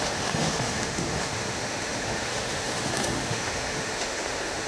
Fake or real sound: fake